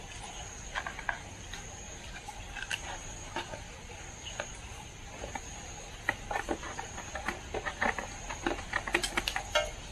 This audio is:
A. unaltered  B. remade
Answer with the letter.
A